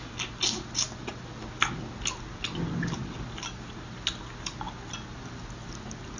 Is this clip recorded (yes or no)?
yes